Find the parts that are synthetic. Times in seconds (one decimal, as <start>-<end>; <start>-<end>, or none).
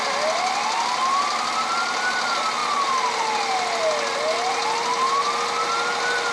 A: none